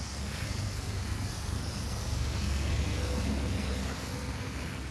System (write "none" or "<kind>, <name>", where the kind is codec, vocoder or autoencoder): codec, SNAC